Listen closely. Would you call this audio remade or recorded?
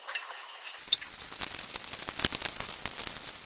recorded